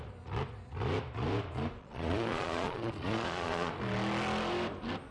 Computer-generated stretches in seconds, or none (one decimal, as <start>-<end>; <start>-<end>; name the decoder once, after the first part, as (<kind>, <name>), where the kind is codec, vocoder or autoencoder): 1.8-3.7 (vocoder, Vocos)